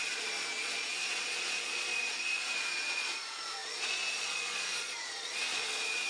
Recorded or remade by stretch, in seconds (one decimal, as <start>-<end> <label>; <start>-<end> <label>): 0.0-6.1 remade